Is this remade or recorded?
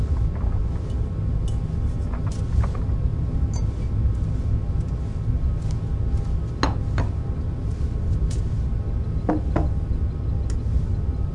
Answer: recorded